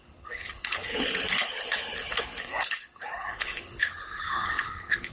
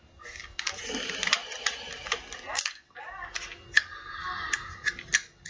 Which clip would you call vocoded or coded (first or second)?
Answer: first